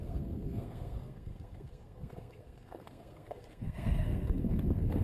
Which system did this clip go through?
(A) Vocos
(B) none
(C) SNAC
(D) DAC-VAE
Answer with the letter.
C